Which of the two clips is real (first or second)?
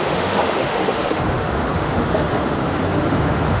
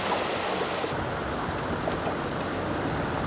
second